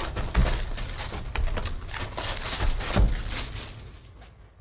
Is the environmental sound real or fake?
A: real